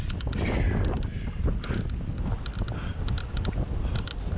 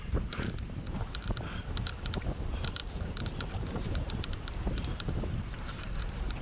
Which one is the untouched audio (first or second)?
first